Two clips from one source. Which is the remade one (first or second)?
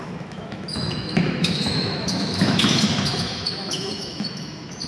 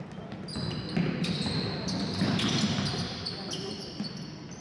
first